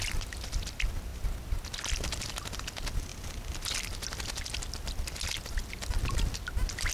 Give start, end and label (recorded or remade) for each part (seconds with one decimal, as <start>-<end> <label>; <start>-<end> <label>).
0.0-6.9 recorded